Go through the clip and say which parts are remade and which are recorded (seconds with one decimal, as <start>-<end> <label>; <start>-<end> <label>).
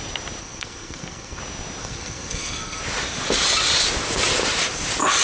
0.0-0.4 recorded; 0.4-1.4 remade; 1.4-1.8 recorded; 1.8-2.8 remade; 2.8-5.2 recorded